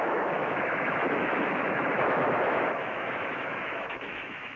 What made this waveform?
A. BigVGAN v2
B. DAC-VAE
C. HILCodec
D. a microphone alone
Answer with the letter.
B